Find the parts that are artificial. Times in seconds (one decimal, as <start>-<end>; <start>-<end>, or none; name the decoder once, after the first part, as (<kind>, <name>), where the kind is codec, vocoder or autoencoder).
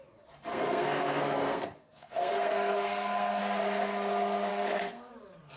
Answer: 0.5-3.4 (codec, SNAC); 4.5-5.1